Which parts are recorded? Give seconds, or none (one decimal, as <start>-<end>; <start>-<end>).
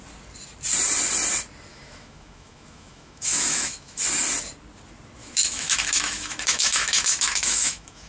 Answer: 0.0-1.7; 4.0-5.2